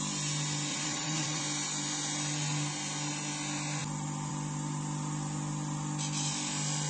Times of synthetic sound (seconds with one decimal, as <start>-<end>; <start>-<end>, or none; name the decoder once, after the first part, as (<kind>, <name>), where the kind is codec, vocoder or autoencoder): 0.7-1.4 (vocoder, WaveNeXt)